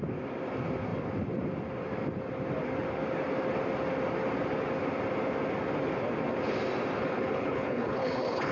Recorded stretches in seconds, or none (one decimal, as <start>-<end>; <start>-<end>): 0.0-7.0